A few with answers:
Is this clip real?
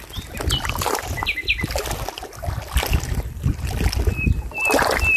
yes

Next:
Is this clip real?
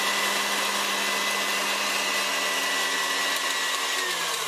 yes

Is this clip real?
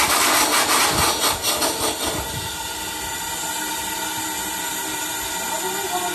yes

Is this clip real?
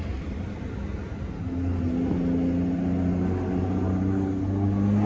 yes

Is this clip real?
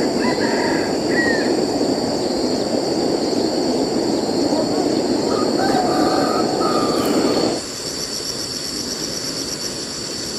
yes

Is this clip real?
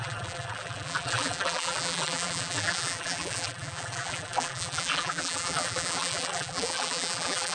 no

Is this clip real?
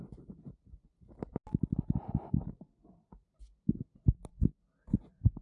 yes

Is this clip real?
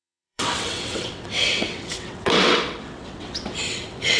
no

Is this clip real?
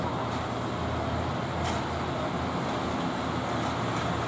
yes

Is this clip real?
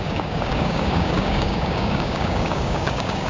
no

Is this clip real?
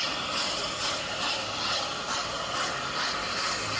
yes